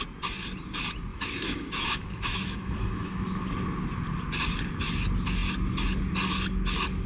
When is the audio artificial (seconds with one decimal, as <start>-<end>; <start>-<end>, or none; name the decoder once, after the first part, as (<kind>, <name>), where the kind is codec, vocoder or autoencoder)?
1.1-3.4 (autoencoder, DAC-VAE)